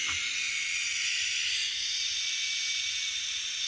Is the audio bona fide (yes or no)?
yes